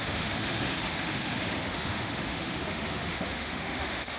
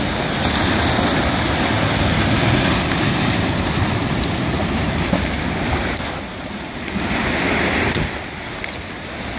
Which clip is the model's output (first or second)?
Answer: first